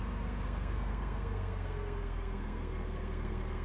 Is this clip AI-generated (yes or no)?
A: yes